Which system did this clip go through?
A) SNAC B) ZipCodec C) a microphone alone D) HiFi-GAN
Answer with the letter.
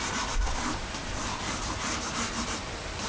C